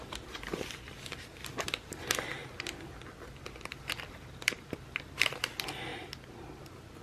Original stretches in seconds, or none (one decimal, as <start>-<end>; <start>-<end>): 0.0-7.0